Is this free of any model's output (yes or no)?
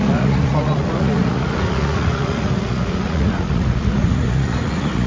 no